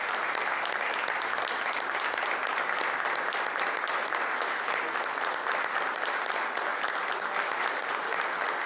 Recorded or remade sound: recorded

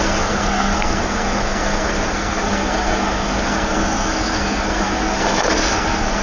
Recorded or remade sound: remade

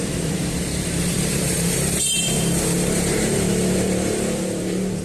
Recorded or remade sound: remade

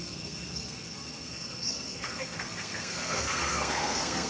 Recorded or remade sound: remade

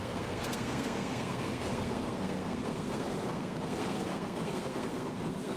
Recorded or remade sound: remade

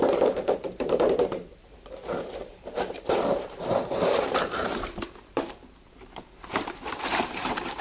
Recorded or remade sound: remade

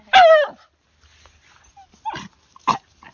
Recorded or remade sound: recorded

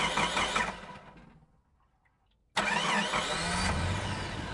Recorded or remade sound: recorded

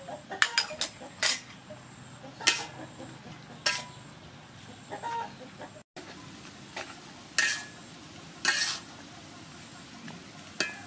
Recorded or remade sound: recorded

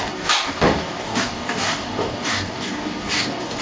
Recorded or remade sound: remade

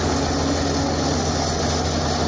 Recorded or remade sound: recorded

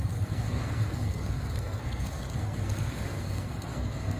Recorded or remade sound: remade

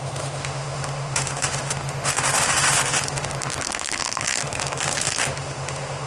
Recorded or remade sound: remade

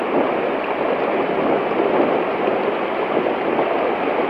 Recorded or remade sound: recorded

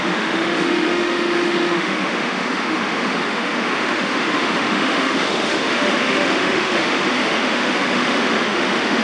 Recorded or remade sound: remade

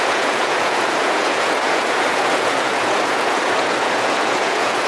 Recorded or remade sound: remade